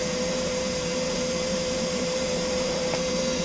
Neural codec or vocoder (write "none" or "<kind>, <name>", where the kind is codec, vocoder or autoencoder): vocoder, BigVGAN v2